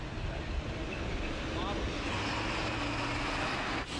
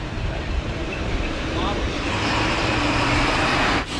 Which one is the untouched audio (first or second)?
first